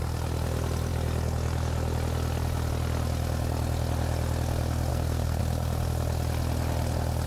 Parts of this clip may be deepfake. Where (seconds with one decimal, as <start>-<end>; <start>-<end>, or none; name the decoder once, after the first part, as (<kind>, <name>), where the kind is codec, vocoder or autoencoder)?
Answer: 4.9-5.4 (codec, SNAC)